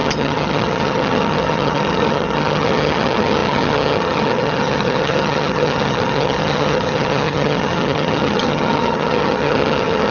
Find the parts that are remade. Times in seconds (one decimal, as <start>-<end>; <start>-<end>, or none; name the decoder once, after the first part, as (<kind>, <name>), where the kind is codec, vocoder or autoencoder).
0.0-10.1 (vocoder, HiFi-GAN)